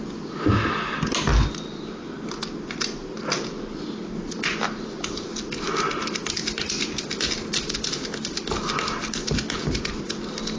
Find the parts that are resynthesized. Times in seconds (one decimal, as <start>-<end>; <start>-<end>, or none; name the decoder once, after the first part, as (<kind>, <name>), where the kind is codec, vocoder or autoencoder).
none